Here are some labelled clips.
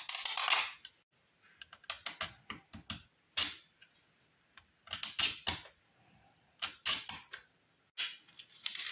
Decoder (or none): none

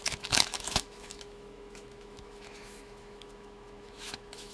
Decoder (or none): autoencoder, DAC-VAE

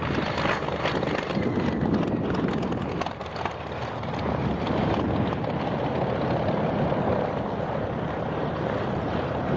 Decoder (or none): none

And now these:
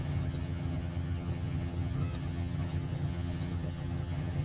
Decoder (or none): vocoder, HiFi-GAN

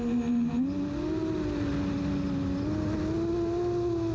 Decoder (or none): none